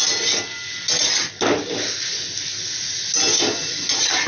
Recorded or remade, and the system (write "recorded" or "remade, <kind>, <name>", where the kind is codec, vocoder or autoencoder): recorded